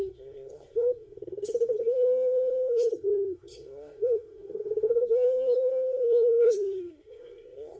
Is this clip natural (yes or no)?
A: no